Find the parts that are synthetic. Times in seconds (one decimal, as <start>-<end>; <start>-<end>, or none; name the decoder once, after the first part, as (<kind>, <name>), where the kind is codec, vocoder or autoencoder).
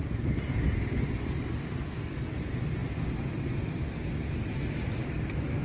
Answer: none